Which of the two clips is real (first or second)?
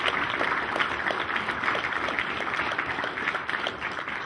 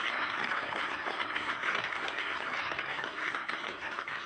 first